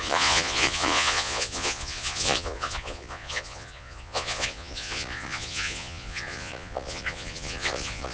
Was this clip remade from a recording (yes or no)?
yes